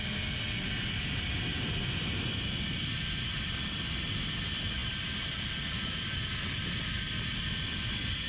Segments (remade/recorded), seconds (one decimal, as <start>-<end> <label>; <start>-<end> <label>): 0.0-8.3 recorded